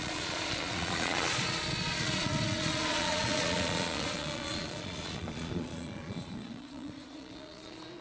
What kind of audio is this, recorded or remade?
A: remade